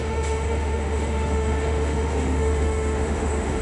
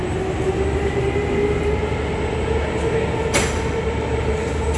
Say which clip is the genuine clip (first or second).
second